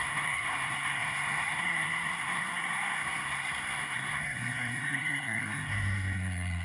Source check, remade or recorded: remade